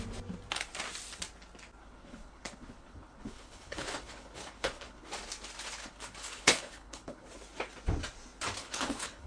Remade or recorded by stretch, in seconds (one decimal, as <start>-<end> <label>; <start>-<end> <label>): 0.0-1.8 recorded; 1.8-5.1 remade; 5.1-5.8 recorded; 5.8-7.3 remade; 7.3-8.6 recorded; 8.6-9.3 remade